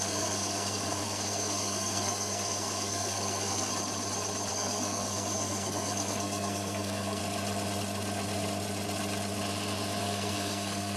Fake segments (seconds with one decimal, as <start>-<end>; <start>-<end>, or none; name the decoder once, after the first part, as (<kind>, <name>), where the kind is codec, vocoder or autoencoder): 0.0-3.7 (codec, SNAC); 4.5-7.2; 10.0-11.0